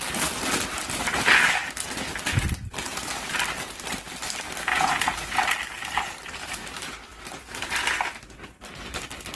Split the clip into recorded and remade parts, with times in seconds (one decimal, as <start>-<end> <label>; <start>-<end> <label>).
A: 0.0-4.7 recorded; 4.7-5.4 remade; 5.4-9.4 recorded